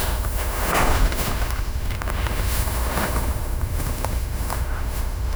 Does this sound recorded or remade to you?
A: remade